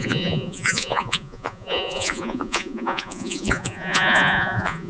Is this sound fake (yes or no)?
yes